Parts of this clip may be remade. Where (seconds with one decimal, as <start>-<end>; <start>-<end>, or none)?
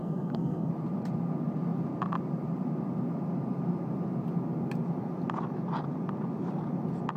0.0-0.7